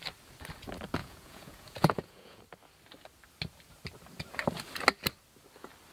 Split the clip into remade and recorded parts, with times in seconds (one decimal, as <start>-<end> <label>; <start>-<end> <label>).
0.0-1.0 recorded; 1.0-2.4 remade; 2.4-5.9 recorded